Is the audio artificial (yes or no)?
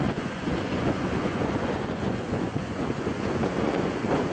yes